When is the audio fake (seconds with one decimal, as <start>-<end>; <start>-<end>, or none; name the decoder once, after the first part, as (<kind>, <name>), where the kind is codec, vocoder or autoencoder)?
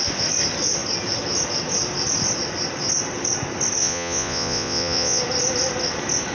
3.8-5.2 (vocoder, Vocos)